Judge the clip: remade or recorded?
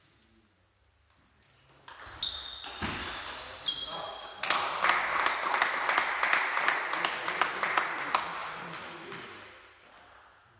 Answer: recorded